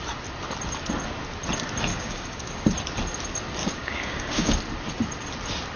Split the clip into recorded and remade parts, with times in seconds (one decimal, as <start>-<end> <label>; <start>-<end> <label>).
0.0-1.9 recorded; 1.9-2.6 remade; 2.6-3.6 recorded; 3.6-4.5 remade; 4.5-5.8 recorded